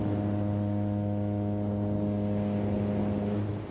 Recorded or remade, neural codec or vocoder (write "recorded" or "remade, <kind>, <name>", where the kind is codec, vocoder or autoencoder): recorded